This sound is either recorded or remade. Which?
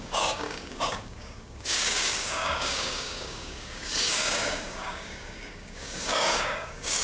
remade